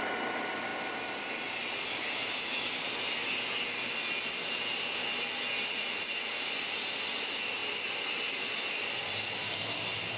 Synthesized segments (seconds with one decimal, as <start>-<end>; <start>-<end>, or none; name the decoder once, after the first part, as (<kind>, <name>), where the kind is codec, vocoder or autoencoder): none